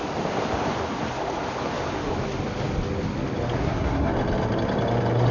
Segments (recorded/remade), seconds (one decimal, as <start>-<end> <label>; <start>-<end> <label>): 0.0-3.6 recorded; 3.6-4.1 remade; 4.1-5.3 recorded